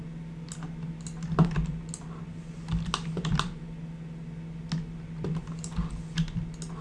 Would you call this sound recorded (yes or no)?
yes